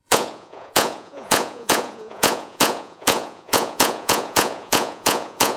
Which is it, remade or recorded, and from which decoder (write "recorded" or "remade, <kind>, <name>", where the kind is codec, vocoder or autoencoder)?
remade, vocoder, Vocos